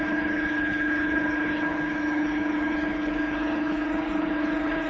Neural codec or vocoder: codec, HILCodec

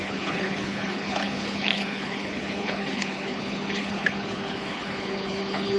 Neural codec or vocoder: codec, HILCodec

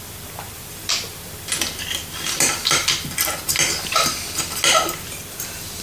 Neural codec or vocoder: none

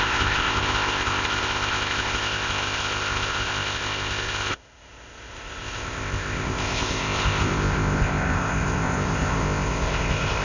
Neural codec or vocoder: codec, ZipCodec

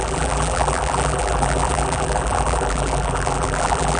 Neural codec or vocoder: vocoder, BigVGAN v2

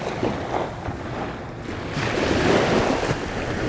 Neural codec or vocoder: none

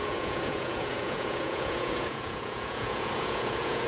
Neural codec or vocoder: vocoder, Vocos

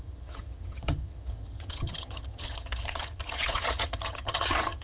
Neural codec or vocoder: vocoder, HiFi-GAN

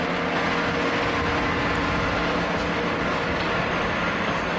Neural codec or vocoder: none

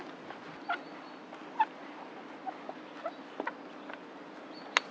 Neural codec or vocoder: none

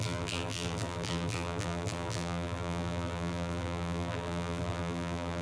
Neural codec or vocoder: vocoder, BigVGAN v2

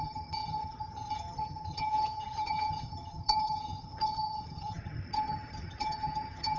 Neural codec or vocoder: vocoder, HiFi-GAN